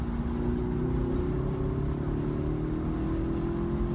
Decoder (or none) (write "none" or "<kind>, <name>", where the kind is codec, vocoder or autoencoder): none